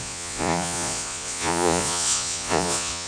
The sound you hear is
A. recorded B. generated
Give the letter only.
B